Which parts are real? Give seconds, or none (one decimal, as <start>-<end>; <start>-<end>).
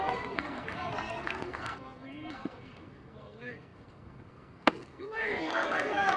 none